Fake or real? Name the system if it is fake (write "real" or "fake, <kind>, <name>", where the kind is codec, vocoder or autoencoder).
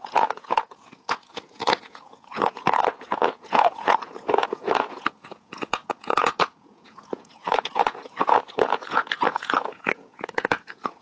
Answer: fake, vocoder, Vocos